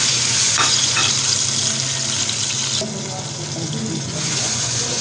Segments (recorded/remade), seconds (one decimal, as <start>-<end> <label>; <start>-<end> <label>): 0.0-1.0 remade; 1.0-4.0 recorded; 4.0-5.0 remade

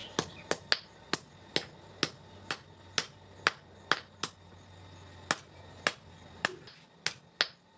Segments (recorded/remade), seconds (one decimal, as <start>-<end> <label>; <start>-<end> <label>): 0.0-7.8 recorded